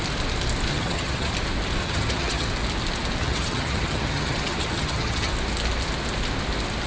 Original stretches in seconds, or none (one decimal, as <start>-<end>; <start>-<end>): 0.0-0.7; 1.3-1.8; 2.5-3.2; 5.3-6.9